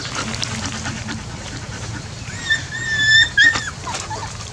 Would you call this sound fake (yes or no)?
no